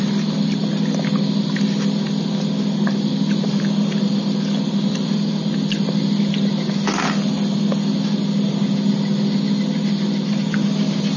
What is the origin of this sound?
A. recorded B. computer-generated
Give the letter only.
A